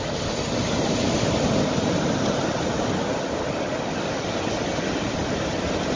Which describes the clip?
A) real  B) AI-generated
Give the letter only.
A